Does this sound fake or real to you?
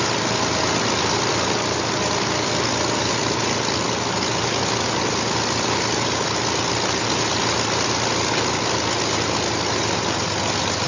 real